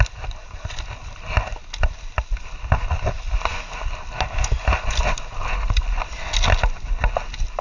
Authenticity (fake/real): real